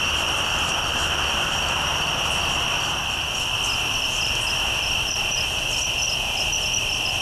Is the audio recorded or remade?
recorded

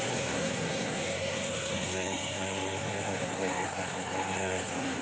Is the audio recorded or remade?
remade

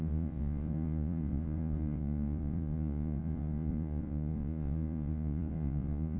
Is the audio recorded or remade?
remade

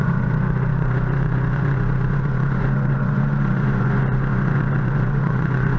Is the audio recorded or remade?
remade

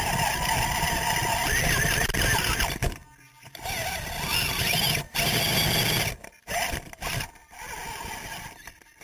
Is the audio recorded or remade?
recorded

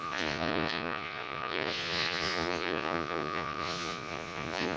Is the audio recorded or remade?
remade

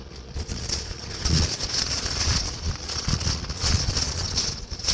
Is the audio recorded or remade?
remade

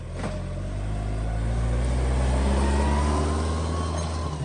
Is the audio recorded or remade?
recorded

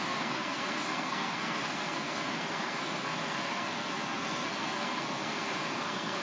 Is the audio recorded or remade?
remade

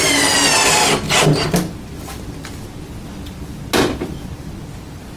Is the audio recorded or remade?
recorded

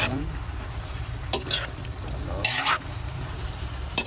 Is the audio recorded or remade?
remade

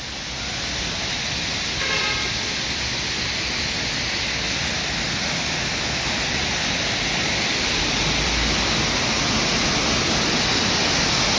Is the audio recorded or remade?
recorded